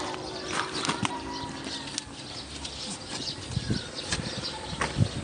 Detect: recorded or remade recorded